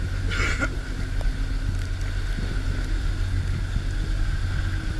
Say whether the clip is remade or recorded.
recorded